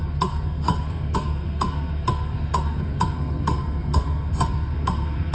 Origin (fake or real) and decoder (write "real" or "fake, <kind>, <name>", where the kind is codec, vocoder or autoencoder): fake, codec, SNAC